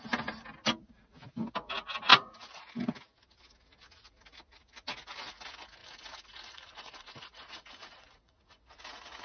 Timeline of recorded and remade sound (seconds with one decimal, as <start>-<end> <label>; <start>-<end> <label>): 0.0-2.1 recorded; 2.1-2.6 remade; 2.6-5.8 recorded; 5.8-8.6 remade; 8.6-9.2 recorded